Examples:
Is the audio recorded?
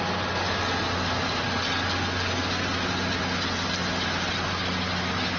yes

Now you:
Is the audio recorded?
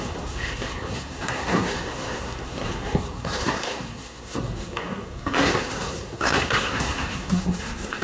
no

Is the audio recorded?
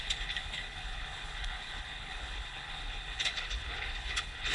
no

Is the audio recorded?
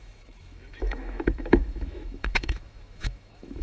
no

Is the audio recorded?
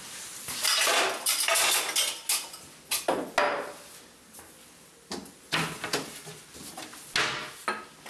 yes